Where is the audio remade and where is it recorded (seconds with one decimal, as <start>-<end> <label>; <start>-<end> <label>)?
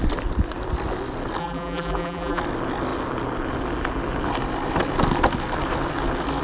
0.0-1.4 recorded; 1.4-2.4 remade; 2.4-6.4 recorded